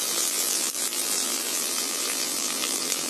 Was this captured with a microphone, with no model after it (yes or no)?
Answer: no